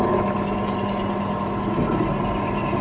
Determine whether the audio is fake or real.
real